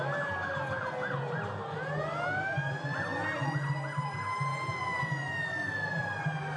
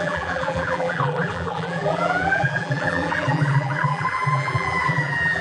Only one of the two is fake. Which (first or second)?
second